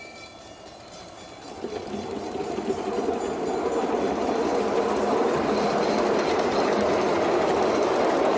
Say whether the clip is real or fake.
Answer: real